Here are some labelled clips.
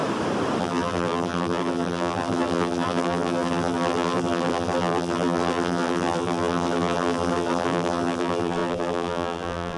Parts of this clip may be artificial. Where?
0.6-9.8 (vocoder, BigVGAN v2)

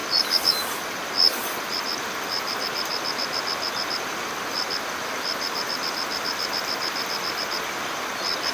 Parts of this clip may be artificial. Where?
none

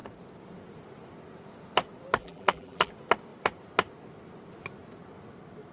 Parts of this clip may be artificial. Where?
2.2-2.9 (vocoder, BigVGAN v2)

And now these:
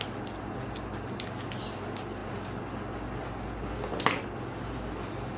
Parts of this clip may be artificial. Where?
none

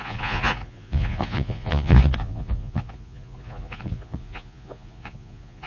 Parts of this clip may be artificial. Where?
0.0-5.7 (vocoder, Vocos)

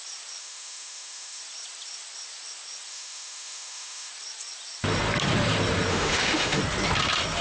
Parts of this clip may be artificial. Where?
0.4-1.4 (autoencoder, DAC-VAE); 2.9-4.1; 5.9-6.6